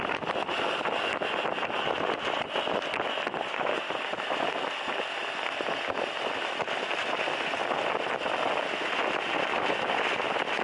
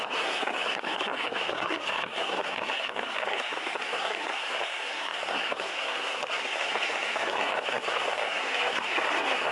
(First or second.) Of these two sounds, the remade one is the second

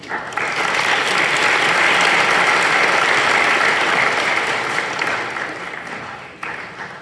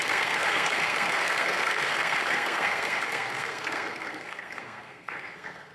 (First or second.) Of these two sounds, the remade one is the second